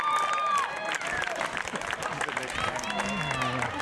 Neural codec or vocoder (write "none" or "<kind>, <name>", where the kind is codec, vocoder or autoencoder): none